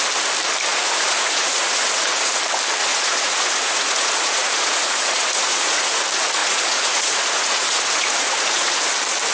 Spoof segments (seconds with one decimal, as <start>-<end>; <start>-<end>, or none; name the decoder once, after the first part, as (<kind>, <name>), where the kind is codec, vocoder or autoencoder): 0.7-2.4 (vocoder, Vocos); 2.8-6.0; 6.4-8.8